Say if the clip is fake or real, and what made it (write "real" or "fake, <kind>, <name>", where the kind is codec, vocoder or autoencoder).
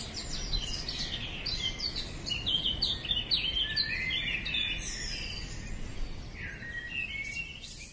real